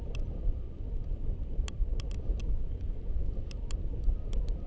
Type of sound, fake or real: real